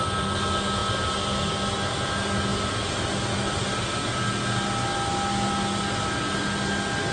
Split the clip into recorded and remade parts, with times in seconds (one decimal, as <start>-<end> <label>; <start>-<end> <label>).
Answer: 0.0-7.1 recorded